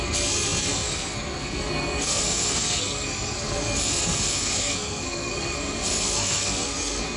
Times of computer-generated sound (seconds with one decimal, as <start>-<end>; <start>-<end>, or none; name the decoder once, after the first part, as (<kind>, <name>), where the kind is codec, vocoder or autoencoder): 0.0-7.2 (codec, SNAC)